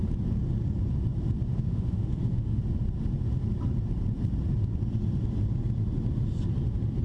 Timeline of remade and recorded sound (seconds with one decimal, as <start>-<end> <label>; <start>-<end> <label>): 0.0-1.5 recorded; 1.5-2.6 remade; 2.6-7.0 recorded